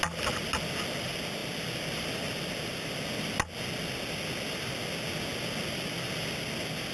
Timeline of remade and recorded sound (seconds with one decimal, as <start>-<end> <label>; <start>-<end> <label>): 0.0-6.9 recorded